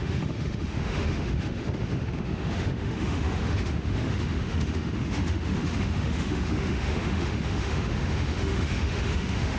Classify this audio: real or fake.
fake